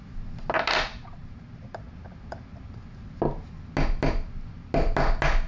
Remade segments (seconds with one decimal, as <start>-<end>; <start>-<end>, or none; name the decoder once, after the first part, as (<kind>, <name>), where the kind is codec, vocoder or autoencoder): none